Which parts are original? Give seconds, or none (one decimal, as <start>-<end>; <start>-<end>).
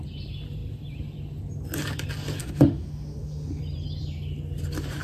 0.0-2.4; 3.6-5.0